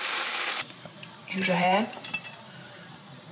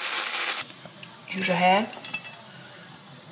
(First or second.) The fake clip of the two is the first